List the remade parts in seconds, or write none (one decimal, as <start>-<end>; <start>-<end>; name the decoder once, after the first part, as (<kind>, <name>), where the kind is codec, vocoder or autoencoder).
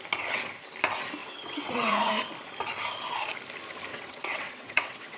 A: 1.2-2.1 (vocoder, WaveNeXt); 3.9-5.2